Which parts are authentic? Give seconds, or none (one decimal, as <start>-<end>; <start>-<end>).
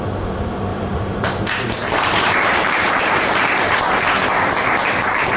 0.0-0.7; 3.0-5.4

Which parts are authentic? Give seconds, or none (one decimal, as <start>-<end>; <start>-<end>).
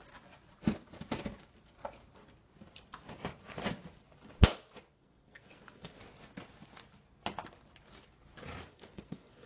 0.0-4.9; 6.0-8.7